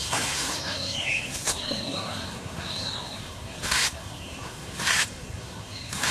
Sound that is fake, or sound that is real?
fake